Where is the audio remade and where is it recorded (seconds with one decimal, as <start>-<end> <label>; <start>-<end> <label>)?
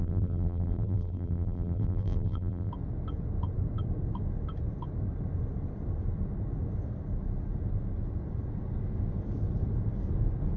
0.0-2.7 remade; 2.7-10.6 recorded